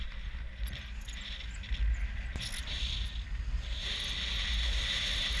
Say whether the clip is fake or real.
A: real